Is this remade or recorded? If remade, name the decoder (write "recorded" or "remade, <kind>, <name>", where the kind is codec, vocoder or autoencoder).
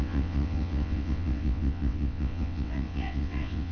remade, vocoder, WaveNeXt